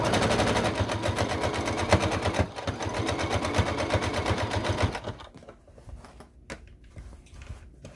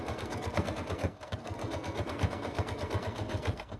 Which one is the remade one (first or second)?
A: second